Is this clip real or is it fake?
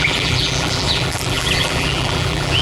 fake